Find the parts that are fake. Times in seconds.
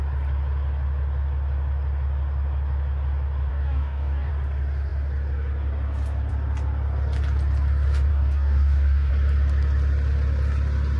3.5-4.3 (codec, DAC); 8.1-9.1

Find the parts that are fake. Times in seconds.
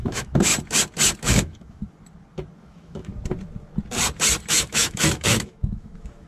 0.0-0.5 (autoencoder, DAC-VAE); 1.3-1.8; 2.6-3.1; 4.5-6.3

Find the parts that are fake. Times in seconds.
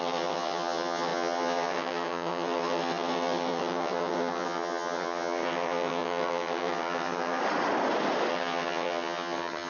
0.0-7.4 (vocoder, HiFi-GAN); 8.3-9.7